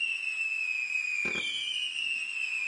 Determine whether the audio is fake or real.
real